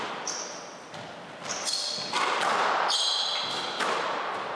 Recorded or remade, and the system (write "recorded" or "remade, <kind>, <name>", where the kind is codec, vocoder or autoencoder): recorded